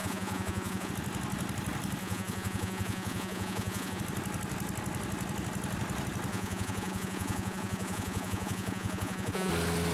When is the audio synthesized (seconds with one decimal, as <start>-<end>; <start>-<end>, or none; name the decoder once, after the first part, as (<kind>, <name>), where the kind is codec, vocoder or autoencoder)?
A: 0.0-0.9 (vocoder, Vocos); 2.0-4.0; 6.3-9.5